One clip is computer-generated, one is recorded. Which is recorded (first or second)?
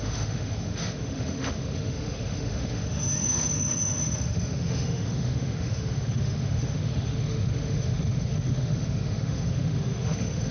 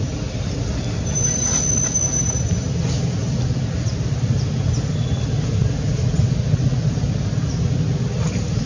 second